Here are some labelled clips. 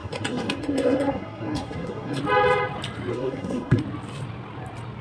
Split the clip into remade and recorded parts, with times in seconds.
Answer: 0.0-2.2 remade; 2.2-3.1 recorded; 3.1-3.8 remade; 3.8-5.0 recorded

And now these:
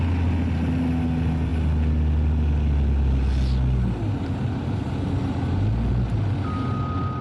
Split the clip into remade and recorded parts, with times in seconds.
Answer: 0.0-7.2 recorded

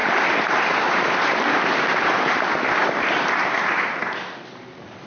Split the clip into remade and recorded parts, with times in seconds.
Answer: 0.0-2.4 remade; 2.4-5.1 recorded

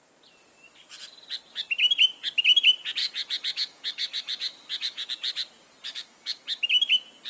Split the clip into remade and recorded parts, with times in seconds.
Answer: 0.0-3.0 recorded; 3.0-5.1 remade; 5.1-5.9 recorded; 5.9-6.6 remade; 6.6-7.3 recorded

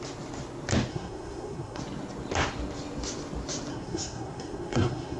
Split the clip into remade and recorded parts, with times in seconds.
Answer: 0.0-0.9 recorded; 0.9-1.8 remade; 1.8-3.7 recorded; 3.7-5.2 remade

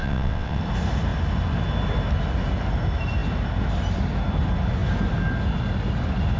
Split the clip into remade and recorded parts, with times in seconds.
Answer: 0.0-0.6 remade; 0.6-6.4 recorded